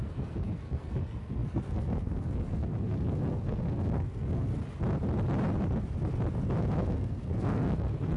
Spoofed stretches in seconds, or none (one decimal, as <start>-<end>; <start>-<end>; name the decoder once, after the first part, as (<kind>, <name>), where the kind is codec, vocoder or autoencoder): 0.0-4.5 (codec, SNAC); 6.6-8.2